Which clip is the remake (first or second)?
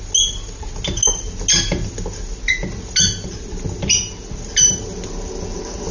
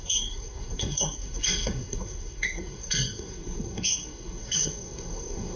second